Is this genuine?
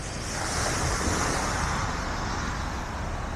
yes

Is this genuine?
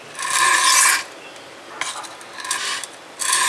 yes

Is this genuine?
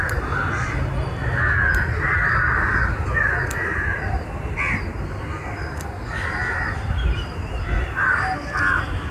yes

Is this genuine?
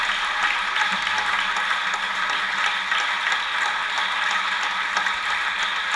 yes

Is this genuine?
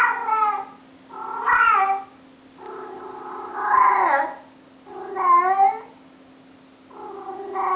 yes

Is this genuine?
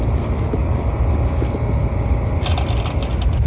yes